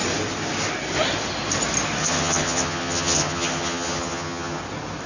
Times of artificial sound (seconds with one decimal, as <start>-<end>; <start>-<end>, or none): 2.0-4.6